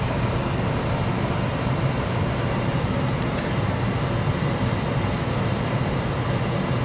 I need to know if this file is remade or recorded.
recorded